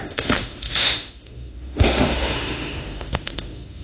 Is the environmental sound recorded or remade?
remade